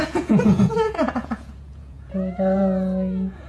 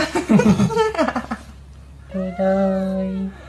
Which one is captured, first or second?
second